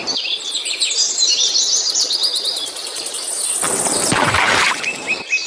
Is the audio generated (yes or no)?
yes